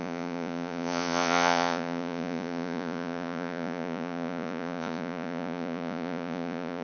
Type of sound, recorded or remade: remade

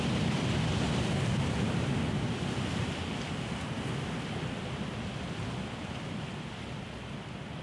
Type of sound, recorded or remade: recorded